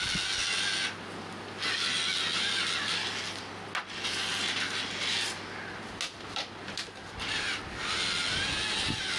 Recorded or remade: recorded